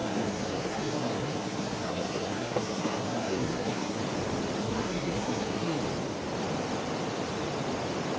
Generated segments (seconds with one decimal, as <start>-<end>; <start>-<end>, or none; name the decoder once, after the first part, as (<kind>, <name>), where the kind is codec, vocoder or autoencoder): 0.0-4.0 (codec, SNAC); 4.6-5.8